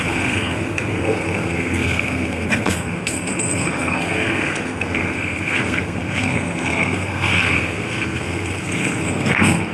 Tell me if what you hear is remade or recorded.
remade